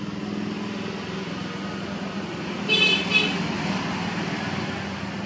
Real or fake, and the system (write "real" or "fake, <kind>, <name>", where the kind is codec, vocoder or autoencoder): real